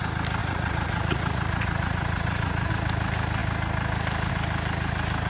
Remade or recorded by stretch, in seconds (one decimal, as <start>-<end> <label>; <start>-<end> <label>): 0.0-0.4 recorded; 0.4-2.7 remade; 2.7-5.3 recorded